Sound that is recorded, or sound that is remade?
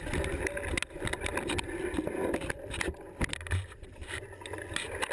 recorded